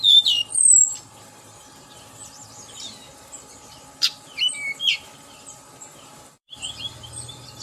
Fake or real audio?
fake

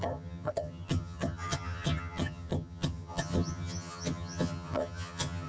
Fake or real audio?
fake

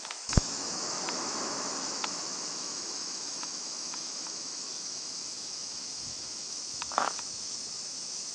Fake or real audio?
fake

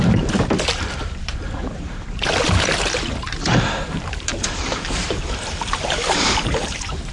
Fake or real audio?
fake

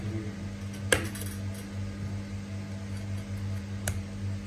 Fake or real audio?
real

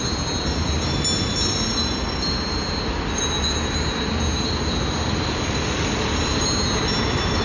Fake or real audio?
real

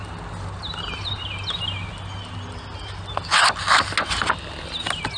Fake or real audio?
real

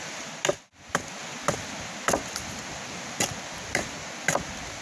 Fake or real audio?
real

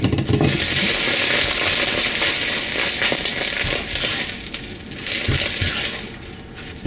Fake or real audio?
real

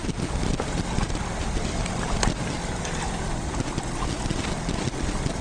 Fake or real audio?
real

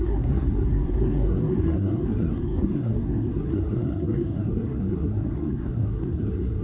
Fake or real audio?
fake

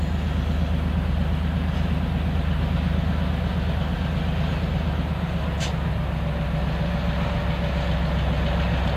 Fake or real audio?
real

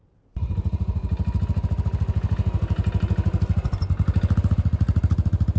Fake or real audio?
real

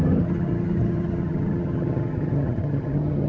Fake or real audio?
fake